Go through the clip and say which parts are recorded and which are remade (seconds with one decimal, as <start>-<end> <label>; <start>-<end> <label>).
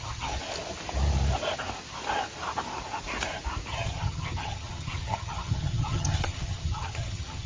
0.0-0.4 remade; 0.4-3.7 recorded; 3.7-7.5 remade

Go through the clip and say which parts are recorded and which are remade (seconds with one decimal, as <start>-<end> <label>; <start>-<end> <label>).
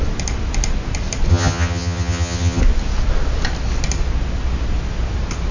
0.0-1.3 recorded; 1.3-2.6 remade; 2.6-5.5 recorded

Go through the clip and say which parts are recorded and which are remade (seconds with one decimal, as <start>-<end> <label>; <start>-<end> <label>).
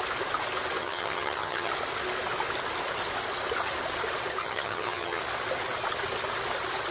0.0-0.8 recorded; 0.8-1.7 remade; 1.7-4.4 recorded; 4.4-5.2 remade; 5.2-6.9 recorded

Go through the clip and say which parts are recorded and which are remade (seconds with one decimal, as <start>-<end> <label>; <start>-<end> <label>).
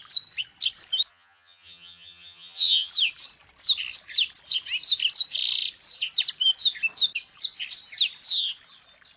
0.0-1.1 recorded; 1.1-2.9 remade; 2.9-9.2 recorded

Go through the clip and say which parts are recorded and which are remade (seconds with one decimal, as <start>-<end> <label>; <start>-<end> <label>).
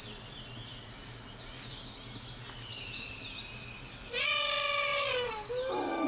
0.0-6.1 recorded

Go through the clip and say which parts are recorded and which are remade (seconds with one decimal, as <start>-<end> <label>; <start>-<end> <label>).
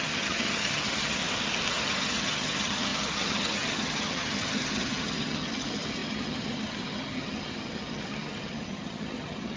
0.0-1.2 remade; 1.2-1.7 recorded; 1.7-9.6 remade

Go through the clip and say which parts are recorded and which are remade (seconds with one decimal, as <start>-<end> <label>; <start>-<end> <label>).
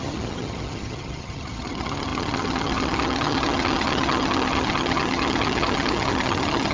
0.0-6.7 remade